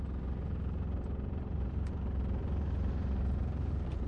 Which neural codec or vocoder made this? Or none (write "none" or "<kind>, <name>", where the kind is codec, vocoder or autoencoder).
vocoder, BigVGAN v2